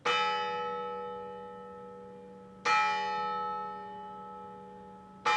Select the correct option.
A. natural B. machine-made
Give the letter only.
A